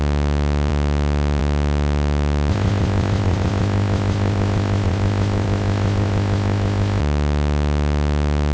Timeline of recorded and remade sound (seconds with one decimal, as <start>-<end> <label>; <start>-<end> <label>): 0.0-2.5 recorded; 2.5-7.0 remade; 7.0-8.5 recorded